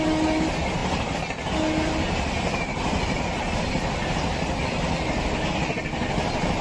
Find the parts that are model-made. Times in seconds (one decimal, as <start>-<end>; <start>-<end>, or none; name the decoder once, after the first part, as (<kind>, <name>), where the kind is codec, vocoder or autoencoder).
none